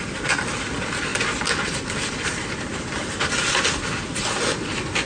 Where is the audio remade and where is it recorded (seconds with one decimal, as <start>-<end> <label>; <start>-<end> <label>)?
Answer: 0.0-5.1 recorded